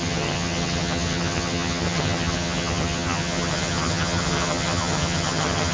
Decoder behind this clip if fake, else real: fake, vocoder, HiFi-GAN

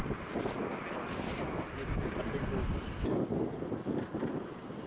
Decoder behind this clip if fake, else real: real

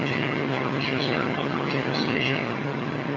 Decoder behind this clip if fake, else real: fake, vocoder, HiFi-GAN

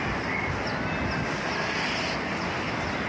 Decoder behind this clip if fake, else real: real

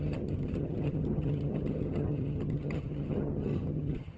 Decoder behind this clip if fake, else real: fake, vocoder, HiFi-GAN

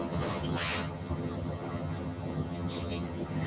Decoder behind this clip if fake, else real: fake, vocoder, HiFi-GAN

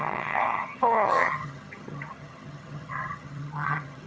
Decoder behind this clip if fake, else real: fake, vocoder, HiFi-GAN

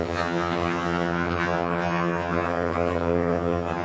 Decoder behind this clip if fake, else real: fake, vocoder, HiFi-GAN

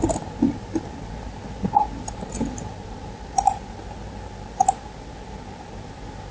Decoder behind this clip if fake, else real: real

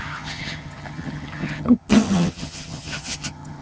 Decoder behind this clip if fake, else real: fake, vocoder, HiFi-GAN